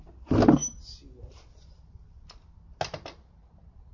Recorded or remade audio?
recorded